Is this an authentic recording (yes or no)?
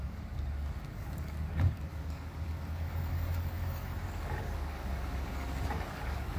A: no